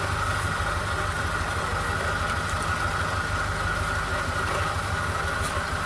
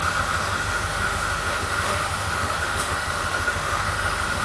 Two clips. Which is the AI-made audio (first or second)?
second